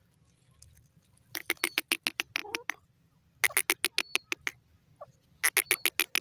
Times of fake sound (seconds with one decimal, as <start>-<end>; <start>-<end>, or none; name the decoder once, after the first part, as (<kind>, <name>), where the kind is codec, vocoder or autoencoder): none